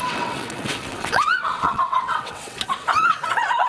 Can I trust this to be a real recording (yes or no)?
no